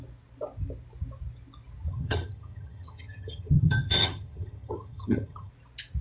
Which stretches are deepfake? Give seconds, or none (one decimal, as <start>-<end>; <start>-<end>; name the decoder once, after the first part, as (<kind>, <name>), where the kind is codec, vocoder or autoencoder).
1.9-5.5 (vocoder, HiFi-GAN)